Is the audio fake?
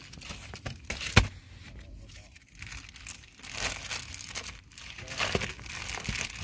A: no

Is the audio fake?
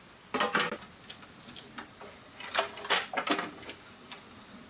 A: no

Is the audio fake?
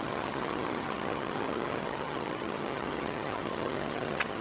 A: yes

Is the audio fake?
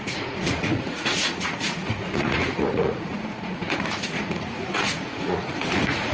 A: yes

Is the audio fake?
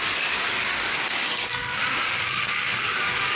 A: yes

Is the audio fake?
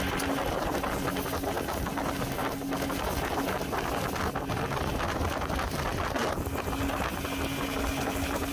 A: no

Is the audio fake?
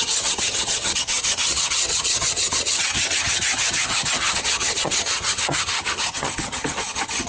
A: yes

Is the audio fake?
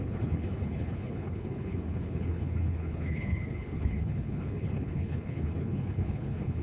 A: yes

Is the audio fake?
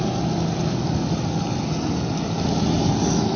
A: no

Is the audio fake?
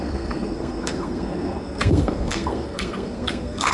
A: yes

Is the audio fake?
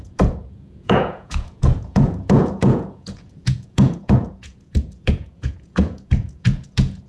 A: yes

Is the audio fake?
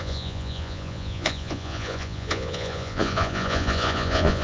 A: yes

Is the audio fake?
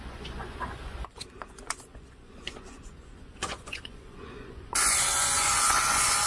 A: yes